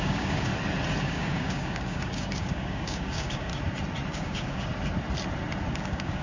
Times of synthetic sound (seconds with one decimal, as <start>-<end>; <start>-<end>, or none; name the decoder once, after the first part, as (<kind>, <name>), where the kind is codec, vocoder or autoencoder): 0.0-0.5 (codec, DAC); 1.0-3.5; 4.1-4.7; 5.7-6.2

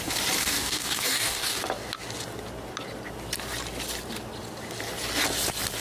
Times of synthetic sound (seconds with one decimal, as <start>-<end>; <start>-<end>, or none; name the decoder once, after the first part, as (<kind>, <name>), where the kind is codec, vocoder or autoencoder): 0.4-1.6 (codec, DAC)